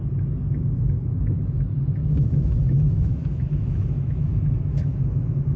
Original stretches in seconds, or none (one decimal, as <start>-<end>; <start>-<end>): 0.0-1.0; 1.6-2.0